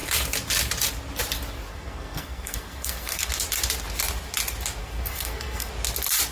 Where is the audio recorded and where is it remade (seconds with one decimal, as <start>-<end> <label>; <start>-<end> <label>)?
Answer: 0.0-1.7 recorded; 1.7-3.3 remade; 3.3-4.8 recorded; 4.8-5.7 remade; 5.7-6.3 recorded

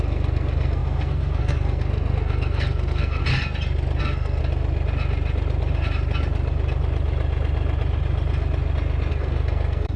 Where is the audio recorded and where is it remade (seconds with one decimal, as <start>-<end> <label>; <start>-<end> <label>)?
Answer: 0.0-3.2 remade; 3.2-4.0 recorded; 4.0-4.4 remade; 4.4-9.1 recorded; 9.1-10.0 remade

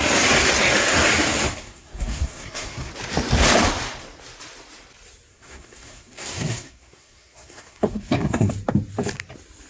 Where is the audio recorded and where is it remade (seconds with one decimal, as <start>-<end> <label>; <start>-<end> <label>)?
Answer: 0.0-1.6 recorded; 1.6-2.9 remade; 2.9-5.3 recorded; 5.3-8.5 remade; 8.5-9.7 recorded

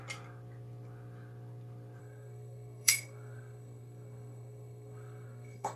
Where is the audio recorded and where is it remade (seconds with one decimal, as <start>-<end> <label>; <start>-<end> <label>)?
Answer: 0.0-2.0 recorded; 2.0-5.8 remade